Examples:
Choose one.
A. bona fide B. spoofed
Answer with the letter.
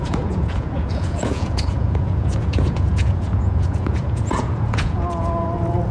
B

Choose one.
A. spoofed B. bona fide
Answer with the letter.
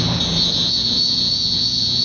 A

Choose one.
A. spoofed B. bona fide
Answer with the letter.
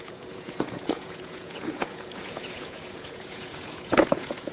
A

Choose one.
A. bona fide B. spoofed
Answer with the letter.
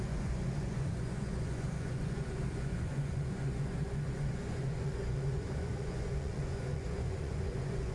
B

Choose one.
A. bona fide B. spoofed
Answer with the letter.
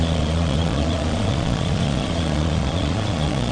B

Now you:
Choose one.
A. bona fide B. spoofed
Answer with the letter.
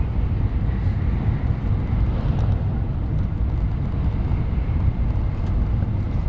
A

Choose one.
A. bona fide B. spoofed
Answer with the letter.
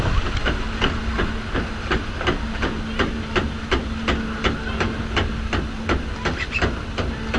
A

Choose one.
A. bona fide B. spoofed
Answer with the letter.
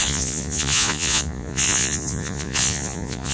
B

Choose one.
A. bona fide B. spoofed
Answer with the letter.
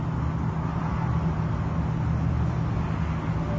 A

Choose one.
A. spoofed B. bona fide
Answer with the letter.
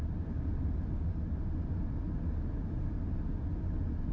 B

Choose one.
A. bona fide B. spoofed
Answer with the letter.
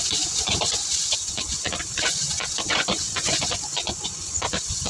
B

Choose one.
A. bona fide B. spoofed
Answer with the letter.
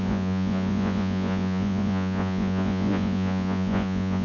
B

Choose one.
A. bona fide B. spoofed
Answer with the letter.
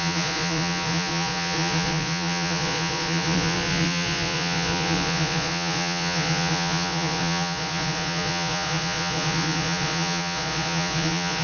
B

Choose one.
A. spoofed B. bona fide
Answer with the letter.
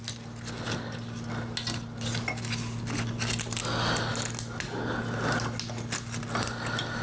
B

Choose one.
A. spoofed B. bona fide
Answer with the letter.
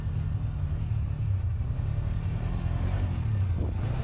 B